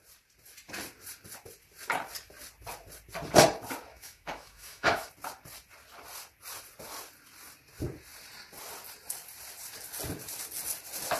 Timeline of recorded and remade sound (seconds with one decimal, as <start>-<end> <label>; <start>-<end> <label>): 0.0-3.9 recorded; 3.9-5.1 remade; 5.1-11.2 recorded